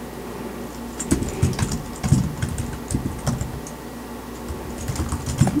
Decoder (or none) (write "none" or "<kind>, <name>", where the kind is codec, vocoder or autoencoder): none